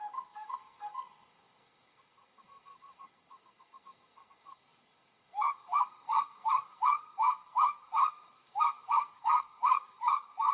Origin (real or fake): fake